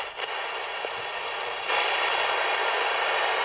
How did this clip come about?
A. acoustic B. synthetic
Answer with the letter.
A